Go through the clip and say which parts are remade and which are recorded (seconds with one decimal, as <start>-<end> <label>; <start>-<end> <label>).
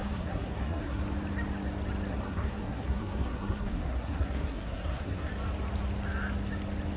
0.0-1.0 remade; 1.0-2.1 recorded; 2.1-5.3 remade; 5.3-7.0 recorded